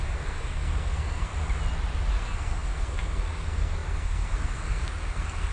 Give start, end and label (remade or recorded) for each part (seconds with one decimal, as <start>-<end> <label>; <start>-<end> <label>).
0.0-1.3 remade; 1.3-2.1 recorded; 2.1-5.5 remade